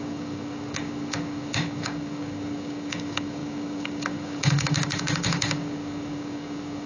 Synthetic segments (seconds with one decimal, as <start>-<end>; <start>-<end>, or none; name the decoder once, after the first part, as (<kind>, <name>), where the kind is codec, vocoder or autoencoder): 0.0-6.9 (codec, DAC)